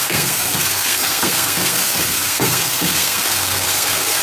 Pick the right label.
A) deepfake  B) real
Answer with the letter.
A